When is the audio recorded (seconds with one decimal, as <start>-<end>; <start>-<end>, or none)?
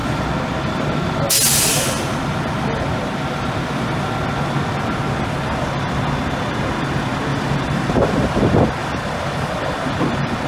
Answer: 0.0-7.3; 8.4-8.8; 9.5-10.5